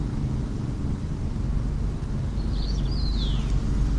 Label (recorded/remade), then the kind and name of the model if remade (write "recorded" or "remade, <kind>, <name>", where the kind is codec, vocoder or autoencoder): recorded